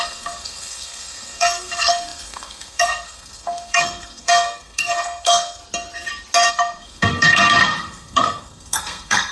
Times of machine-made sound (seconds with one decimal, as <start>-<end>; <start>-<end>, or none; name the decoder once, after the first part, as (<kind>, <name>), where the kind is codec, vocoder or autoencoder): 0.0-5.6 (codec, SNAC); 6.5-9.3